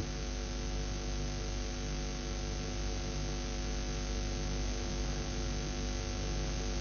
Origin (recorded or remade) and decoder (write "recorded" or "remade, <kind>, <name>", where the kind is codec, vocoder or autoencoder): recorded